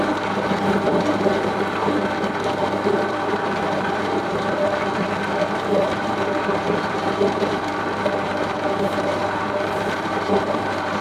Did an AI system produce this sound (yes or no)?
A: yes